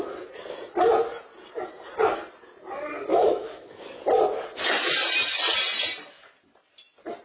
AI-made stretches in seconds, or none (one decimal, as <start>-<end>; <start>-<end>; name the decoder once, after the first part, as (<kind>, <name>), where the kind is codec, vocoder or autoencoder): 3.1-3.8 (autoencoder, DAC-VAE)